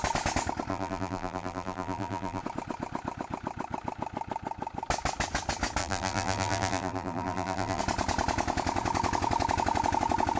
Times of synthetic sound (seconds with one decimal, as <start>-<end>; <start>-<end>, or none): 0.7-2.4; 5.8-7.8